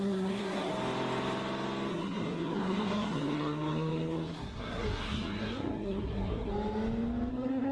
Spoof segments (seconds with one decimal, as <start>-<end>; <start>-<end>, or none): 0.0-0.7; 1.9-6.5; 7.3-7.7